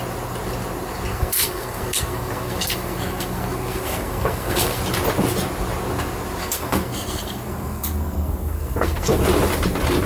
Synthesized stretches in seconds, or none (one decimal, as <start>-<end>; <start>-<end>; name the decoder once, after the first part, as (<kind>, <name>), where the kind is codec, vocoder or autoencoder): 1.1-4.8 (codec, SNAC); 6.4-9.2